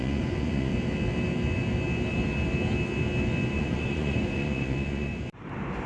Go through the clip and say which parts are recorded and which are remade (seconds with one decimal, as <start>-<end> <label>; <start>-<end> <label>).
0.0-0.7 remade; 0.7-3.5 recorded; 3.5-5.1 remade; 5.1-5.9 recorded